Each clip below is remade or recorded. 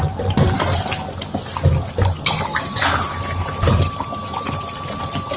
recorded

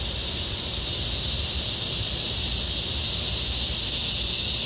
recorded